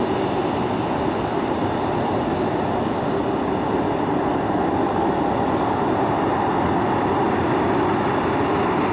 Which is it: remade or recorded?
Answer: recorded